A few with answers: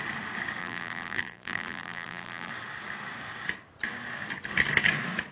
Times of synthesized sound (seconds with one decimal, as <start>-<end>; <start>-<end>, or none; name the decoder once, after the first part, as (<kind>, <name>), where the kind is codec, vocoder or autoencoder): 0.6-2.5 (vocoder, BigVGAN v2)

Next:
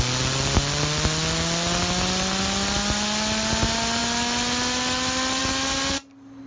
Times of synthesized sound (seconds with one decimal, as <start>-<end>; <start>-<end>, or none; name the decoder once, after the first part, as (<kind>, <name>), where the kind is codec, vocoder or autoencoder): none

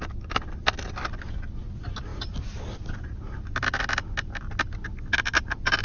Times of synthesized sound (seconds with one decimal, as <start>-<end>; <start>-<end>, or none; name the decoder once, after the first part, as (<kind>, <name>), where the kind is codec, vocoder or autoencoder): none

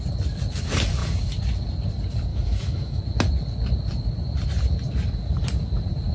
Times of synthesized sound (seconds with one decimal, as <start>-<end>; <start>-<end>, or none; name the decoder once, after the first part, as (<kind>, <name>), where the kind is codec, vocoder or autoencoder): 2.3-3.0 (autoencoder, DAC-VAE)